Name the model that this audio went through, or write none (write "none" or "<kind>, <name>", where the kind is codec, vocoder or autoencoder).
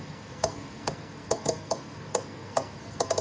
codec, SNAC